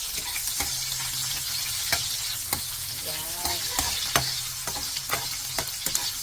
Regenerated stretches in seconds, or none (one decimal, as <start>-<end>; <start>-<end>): none